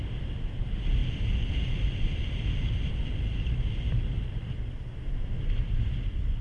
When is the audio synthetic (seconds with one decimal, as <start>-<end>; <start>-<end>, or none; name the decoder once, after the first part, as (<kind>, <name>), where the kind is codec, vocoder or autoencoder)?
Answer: none